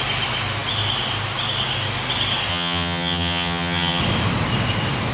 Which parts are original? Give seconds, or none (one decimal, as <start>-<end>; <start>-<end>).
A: 0.0-2.5; 4.0-5.1